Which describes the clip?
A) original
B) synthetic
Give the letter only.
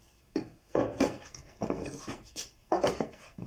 B